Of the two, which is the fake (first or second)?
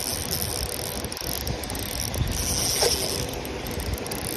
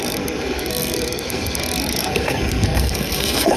second